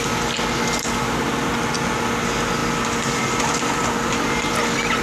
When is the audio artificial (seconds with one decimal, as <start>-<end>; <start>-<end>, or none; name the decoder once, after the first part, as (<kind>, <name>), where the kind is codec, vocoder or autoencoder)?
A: none